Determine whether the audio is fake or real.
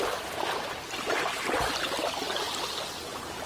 real